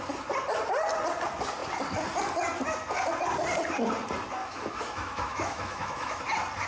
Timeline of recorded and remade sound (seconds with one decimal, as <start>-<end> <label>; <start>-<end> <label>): 0.0-4.4 recorded; 4.4-6.2 remade; 6.2-6.7 recorded